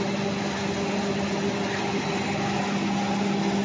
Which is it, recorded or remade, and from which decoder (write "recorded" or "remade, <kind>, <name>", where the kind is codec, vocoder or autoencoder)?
recorded